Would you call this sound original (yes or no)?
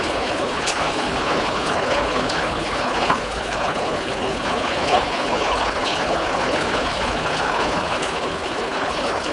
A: no